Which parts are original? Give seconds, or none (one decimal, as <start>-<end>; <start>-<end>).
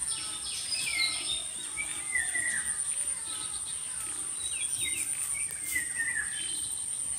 0.0-7.2